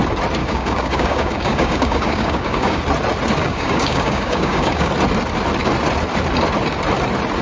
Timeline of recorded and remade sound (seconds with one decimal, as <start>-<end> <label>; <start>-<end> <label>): 0.0-0.4 recorded; 0.4-2.8 remade; 2.8-3.4 recorded; 3.4-4.9 remade; 4.9-7.4 recorded